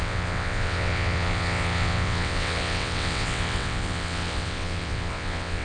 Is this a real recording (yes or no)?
no